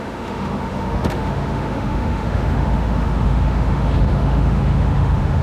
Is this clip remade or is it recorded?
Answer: remade